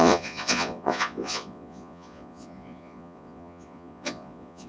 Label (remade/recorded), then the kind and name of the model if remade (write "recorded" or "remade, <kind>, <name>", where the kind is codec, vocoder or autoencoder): remade, vocoder, Vocos